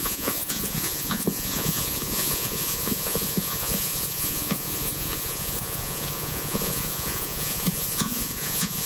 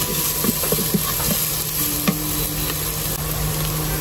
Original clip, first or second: second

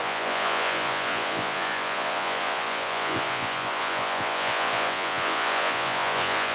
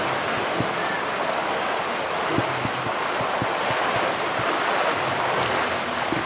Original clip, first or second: second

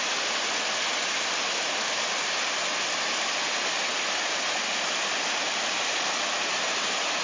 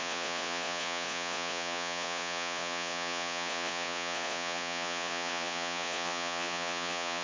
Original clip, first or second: first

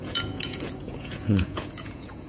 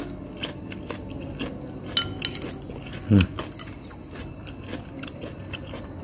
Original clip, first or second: second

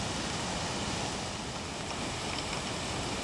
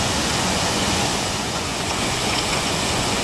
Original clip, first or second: first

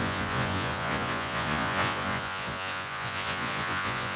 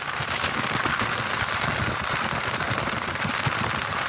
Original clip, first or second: second